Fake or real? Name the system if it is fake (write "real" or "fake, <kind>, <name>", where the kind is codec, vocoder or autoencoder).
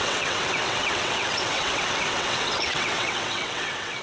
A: fake, vocoder, WaveNeXt